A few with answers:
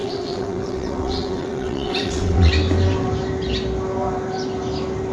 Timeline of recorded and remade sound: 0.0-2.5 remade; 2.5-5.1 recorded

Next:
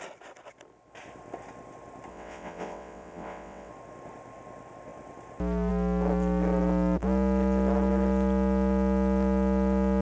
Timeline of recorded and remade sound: 0.0-2.1 recorded; 2.1-3.7 remade; 3.7-10.0 recorded

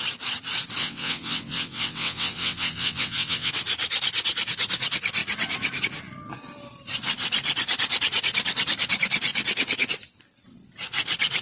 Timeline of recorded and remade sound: 0.0-0.8 recorded; 0.8-3.5 remade; 3.5-11.4 recorded

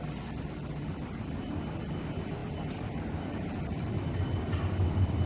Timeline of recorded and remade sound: 0.0-5.3 recorded

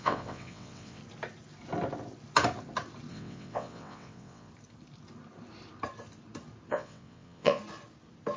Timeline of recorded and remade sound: 0.0-1.0 remade; 1.0-3.1 recorded; 3.1-4.5 remade; 4.5-6.7 recorded; 6.7-7.6 remade; 7.6-8.4 recorded

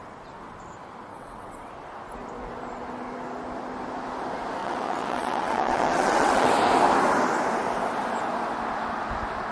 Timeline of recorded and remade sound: 0.0-1.1 recorded; 1.1-1.7 remade; 1.7-4.6 recorded; 4.6-6.5 remade; 6.5-9.5 recorded

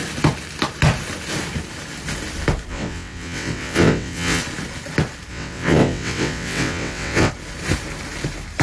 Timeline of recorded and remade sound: 0.0-2.7 recorded; 2.7-4.4 remade; 4.4-5.3 recorded; 5.3-7.3 remade; 7.3-8.6 recorded